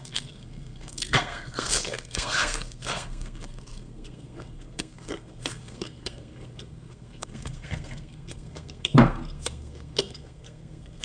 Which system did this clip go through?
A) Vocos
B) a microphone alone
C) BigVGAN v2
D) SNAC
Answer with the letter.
D